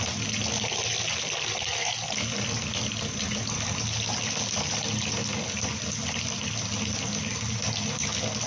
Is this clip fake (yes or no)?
no